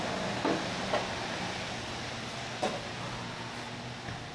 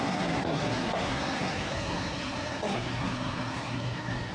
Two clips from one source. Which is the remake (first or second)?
second